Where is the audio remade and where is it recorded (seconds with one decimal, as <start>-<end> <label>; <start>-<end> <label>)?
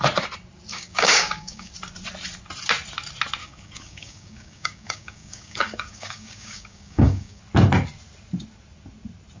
0.0-0.7 recorded; 0.7-1.7 remade; 1.7-3.4 recorded; 3.4-7.4 remade; 7.4-9.4 recorded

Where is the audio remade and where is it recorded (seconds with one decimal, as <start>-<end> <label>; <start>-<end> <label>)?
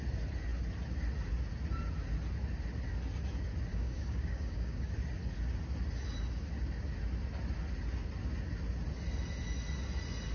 0.0-3.7 recorded; 3.7-4.9 remade; 4.9-10.3 recorded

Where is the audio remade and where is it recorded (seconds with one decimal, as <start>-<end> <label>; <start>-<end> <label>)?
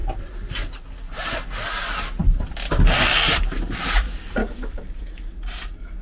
0.0-4.4 recorded; 4.4-5.4 remade; 5.4-6.0 recorded